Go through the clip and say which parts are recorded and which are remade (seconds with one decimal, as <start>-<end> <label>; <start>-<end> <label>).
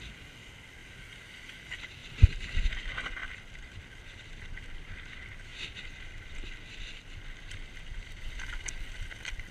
0.0-0.8 recorded; 0.8-1.4 remade; 1.4-2.0 recorded; 2.0-2.7 remade; 2.7-3.2 recorded; 3.2-4.2 remade; 4.2-9.5 recorded